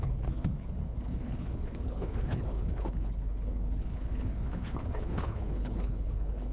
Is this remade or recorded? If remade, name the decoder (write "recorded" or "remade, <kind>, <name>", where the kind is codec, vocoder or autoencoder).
remade, codec, HILCodec